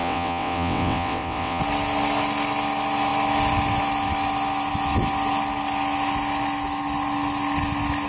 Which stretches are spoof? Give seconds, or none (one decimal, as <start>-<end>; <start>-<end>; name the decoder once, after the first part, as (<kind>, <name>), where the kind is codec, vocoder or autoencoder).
0.0-1.6 (vocoder, WaveNeXt)